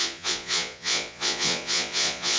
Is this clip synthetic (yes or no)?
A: yes